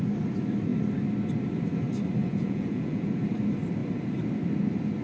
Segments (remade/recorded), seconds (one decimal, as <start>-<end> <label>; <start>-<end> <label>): 0.0-2.2 recorded; 2.2-3.2 remade; 3.2-5.0 recorded